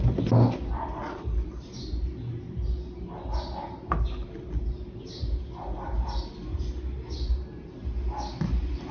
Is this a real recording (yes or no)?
yes